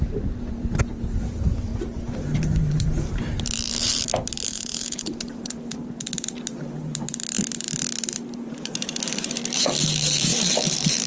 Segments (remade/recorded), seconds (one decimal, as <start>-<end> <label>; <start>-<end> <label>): 0.0-1.7 remade; 1.7-2.2 recorded; 2.2-11.1 remade